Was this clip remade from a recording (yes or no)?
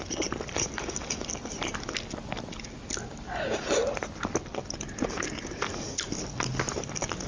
no